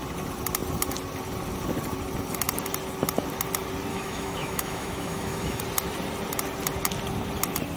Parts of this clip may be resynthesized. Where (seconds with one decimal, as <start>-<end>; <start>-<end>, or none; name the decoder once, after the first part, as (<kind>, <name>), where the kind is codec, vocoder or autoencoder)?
3.9-5.6 (autoencoder, DAC-VAE)